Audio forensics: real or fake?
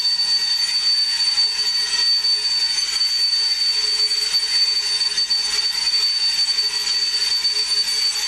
real